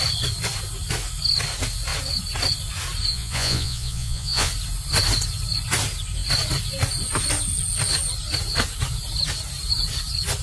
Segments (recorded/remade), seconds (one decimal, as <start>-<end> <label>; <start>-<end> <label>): 0.0-3.1 recorded; 3.1-4.5 remade; 4.5-10.4 recorded